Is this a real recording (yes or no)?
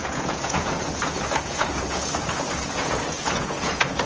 no